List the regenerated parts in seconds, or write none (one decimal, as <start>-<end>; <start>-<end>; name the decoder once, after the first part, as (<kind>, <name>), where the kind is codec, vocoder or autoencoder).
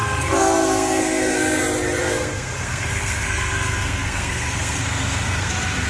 0.0-1.6 (codec, SNAC); 2.0-5.5